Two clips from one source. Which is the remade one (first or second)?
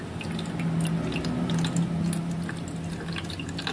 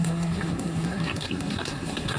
second